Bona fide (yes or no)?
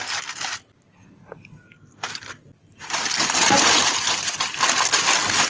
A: yes